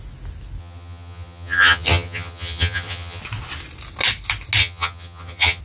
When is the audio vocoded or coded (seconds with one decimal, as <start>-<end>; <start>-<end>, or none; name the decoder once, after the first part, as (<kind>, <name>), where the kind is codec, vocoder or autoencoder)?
0.6-3.2 (vocoder, HiFi-GAN); 4.6-5.6